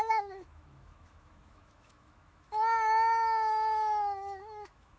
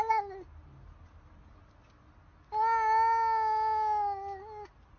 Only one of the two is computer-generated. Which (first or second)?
first